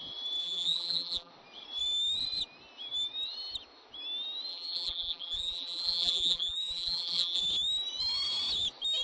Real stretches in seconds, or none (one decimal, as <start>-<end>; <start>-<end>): 0.0-0.4; 1.3-4.5; 7.4-9.0